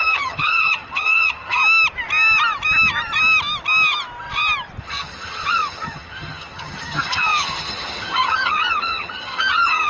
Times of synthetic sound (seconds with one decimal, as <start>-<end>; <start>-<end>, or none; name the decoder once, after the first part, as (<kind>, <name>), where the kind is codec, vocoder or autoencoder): 0.0-1.6 (vocoder, HiFi-GAN); 4.8-9.9